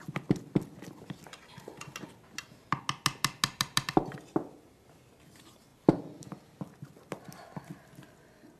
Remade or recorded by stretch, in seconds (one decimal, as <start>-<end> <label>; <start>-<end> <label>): 0.0-8.6 recorded